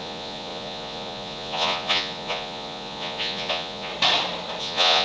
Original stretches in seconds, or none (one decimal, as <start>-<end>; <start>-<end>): 3.9-4.6

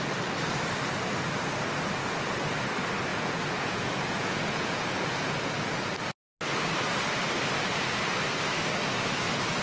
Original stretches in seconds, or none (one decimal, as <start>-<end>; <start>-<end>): 0.0-3.1; 5.9-9.6

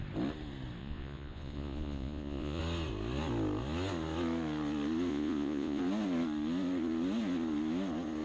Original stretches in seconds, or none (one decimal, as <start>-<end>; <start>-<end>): 0.0-0.8; 2.6-5.1; 5.8-8.2

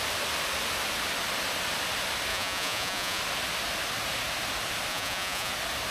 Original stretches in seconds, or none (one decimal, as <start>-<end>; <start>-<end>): 0.0-2.3; 3.2-4.9; 5.5-5.9

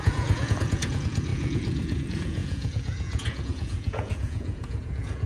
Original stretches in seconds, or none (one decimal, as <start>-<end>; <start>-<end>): none